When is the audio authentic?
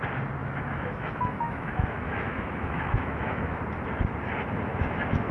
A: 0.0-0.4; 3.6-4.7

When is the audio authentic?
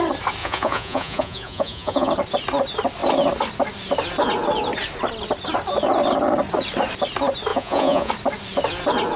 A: 0.0-0.4; 2.1-7.5; 8.1-9.2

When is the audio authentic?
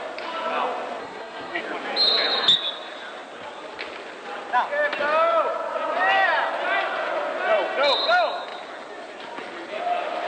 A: 0.0-1.0; 1.6-10.3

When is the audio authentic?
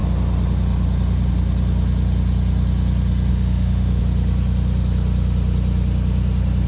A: 0.0-3.3; 4.0-6.7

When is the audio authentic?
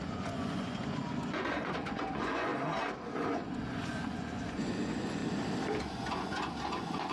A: 2.5-3.3; 5.2-5.8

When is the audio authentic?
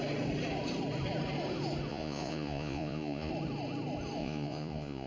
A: 0.0-1.9; 3.3-4.2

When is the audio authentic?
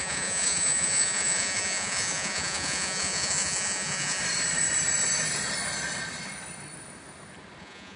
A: 4.2-7.6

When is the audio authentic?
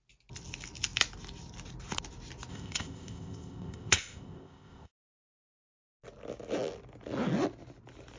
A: 0.0-2.5; 4.9-8.2